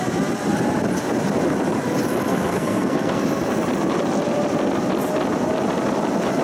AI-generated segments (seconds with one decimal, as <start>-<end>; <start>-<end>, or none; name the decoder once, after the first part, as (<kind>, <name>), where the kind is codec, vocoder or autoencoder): 2.3-3.2 (codec, SNAC)